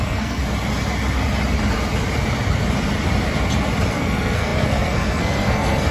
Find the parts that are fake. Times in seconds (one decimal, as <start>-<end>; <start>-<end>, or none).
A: 0.0-0.4; 3.9-5.9